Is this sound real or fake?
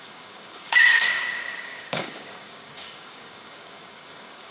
fake